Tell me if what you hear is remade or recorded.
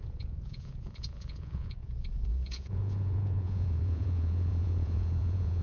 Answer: remade